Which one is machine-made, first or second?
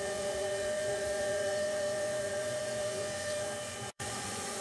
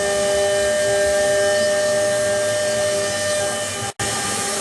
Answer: first